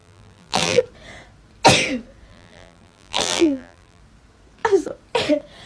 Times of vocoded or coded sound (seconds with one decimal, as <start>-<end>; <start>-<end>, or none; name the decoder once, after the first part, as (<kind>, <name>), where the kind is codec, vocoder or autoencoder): 0.0-0.8 (vocoder, BigVGAN v2); 2.3-4.0